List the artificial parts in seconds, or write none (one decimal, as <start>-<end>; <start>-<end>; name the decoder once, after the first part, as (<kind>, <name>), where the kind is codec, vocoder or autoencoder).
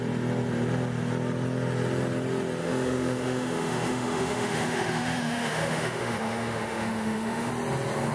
2.6-7.5 (autoencoder, DAC-VAE)